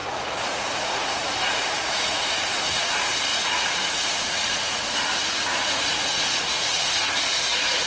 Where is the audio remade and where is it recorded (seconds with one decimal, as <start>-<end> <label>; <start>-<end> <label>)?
0.0-2.9 remade; 2.9-3.3 recorded; 3.3-4.8 remade; 4.8-5.3 recorded; 5.3-7.9 remade

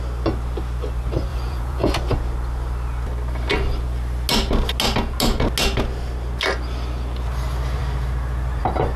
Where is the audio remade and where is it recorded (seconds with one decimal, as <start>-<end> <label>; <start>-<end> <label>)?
0.0-1.3 recorded; 1.3-1.9 remade; 1.9-9.0 recorded